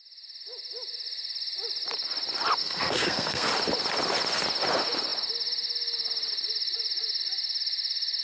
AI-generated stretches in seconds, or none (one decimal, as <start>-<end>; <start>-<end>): 2.6-3.5